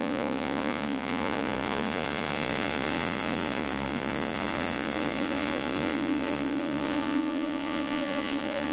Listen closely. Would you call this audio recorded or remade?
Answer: remade